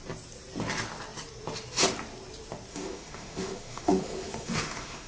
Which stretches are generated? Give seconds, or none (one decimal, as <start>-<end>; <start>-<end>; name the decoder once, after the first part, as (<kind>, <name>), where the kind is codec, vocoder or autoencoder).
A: 2.7-5.1 (autoencoder, DAC-VAE)